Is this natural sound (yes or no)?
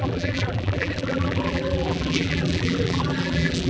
no